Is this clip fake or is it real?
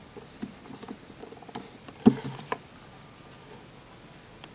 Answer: real